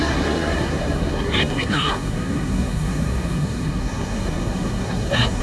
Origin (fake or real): fake